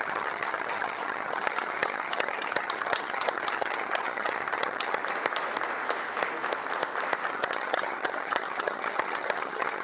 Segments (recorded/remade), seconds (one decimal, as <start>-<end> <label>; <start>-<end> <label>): 0.0-5.0 remade; 5.0-7.3 recorded; 7.3-9.8 remade